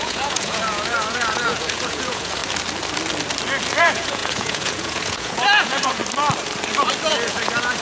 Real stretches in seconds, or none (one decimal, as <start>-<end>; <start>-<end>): 2.4-3.8; 6.0-7.1